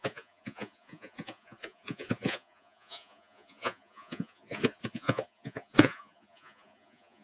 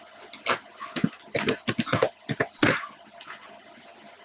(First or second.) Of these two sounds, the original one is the second